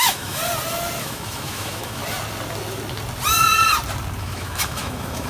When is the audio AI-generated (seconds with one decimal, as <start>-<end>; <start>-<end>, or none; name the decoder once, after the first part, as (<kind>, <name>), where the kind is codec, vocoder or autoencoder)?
0.0-0.4 (autoencoder, DAC-VAE); 1.0-2.0; 4.2-5.3